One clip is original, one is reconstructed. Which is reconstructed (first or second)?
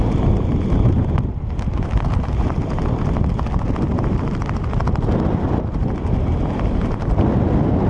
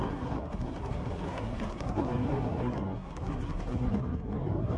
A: second